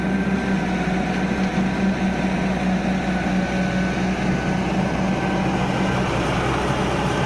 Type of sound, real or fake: real